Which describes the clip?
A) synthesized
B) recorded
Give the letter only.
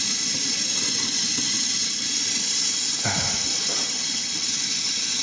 A